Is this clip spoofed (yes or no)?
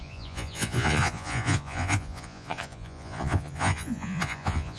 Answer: yes